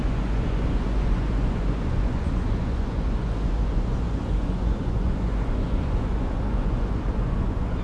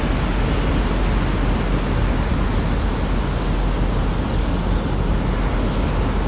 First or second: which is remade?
first